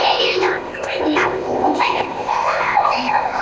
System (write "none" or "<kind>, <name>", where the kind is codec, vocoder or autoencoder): codec, ZipCodec